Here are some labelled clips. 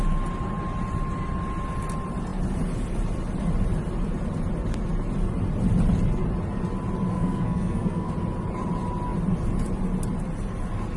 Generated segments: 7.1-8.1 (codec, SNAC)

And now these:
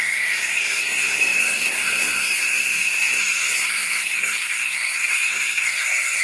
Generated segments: 0.0-6.2 (codec, SNAC)